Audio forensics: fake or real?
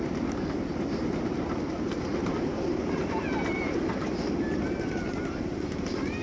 real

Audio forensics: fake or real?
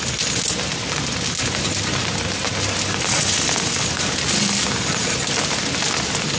real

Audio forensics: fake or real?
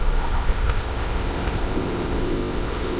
fake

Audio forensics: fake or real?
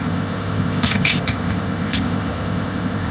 fake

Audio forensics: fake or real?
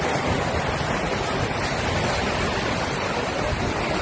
real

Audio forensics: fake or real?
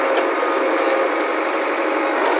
real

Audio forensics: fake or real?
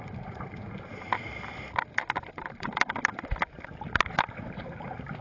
real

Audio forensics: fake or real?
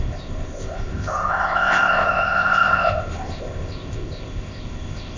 fake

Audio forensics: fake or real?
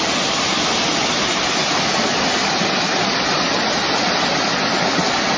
real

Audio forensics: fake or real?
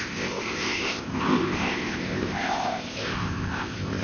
fake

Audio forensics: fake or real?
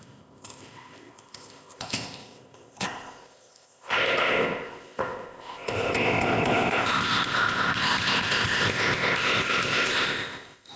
fake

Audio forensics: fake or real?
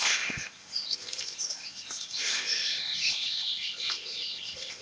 fake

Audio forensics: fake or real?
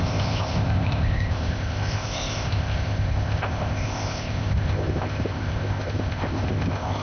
fake